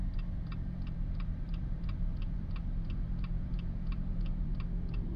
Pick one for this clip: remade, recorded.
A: remade